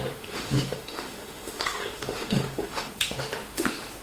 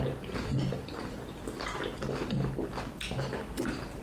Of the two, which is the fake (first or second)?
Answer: first